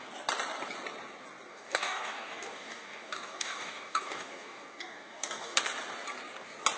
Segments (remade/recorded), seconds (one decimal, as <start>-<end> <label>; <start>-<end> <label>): 0.0-1.5 recorded; 1.5-5.6 remade; 5.6-6.8 recorded